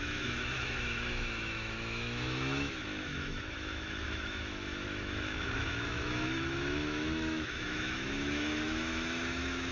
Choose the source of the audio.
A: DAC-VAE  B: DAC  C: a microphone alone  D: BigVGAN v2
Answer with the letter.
A